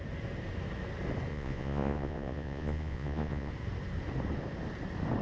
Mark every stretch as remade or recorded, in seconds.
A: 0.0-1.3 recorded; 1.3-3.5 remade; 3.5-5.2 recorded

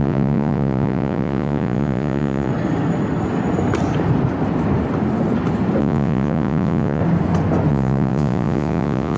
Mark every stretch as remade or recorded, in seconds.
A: 0.0-2.5 remade; 2.5-5.8 recorded; 5.8-7.0 remade; 7.0-7.7 recorded; 7.7-9.2 remade

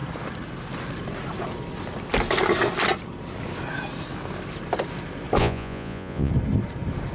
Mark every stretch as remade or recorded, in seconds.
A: 0.0-5.4 recorded; 5.4-6.3 remade; 6.3-7.1 recorded

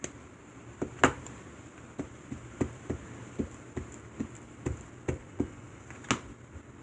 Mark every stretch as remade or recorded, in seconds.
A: 0.0-5.2 recorded; 5.2-5.8 remade; 5.8-6.8 recorded

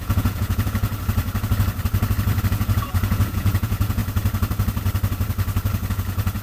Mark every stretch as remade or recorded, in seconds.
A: 0.0-0.9 remade; 0.9-2.5 recorded; 2.5-4.0 remade; 4.0-5.9 recorded; 5.9-6.4 remade

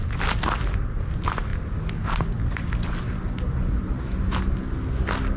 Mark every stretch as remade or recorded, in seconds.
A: 0.0-5.4 recorded

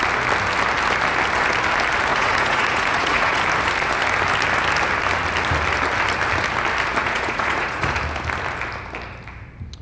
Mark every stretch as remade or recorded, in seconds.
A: 0.0-2.1 recorded; 2.1-3.4 remade; 3.4-7.0 recorded; 7.0-8.0 remade; 8.0-9.8 recorded